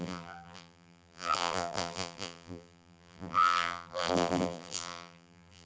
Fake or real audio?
fake